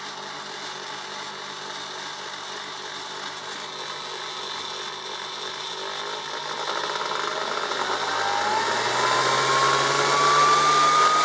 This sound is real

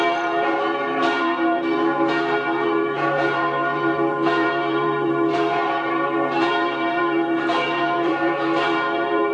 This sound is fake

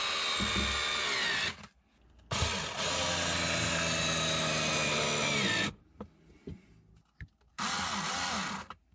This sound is real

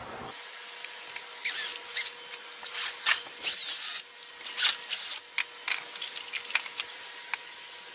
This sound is real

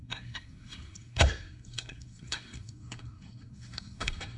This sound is fake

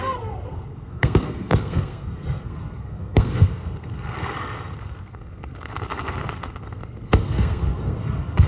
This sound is fake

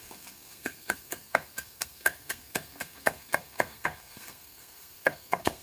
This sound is fake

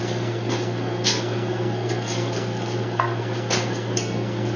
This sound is fake